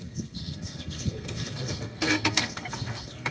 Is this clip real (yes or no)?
no